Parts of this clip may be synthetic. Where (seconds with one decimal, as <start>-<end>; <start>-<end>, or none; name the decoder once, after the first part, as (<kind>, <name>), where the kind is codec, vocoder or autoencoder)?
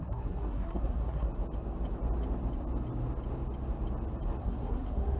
0.0-1.3 (codec, SNAC); 4.4-5.2